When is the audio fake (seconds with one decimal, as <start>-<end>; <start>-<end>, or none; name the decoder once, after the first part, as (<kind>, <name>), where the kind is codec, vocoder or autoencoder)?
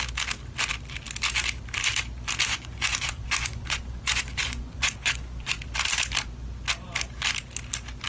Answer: 2.5-5.5 (vocoder, Vocos)